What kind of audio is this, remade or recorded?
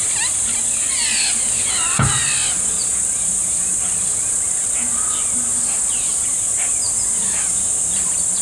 recorded